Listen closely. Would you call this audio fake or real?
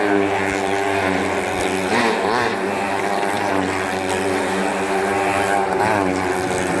real